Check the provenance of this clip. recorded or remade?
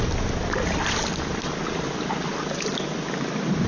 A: recorded